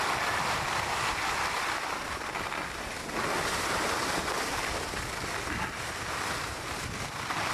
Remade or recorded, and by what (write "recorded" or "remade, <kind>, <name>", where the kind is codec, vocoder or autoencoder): recorded